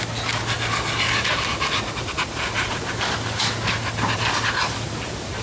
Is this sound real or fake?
real